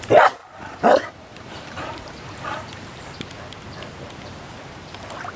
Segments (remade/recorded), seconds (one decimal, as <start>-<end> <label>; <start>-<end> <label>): 0.0-0.4 recorded; 0.4-3.0 remade; 3.0-5.4 recorded